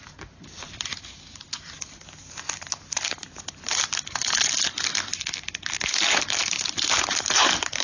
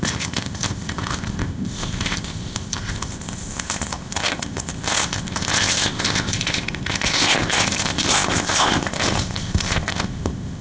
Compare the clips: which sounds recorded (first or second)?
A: first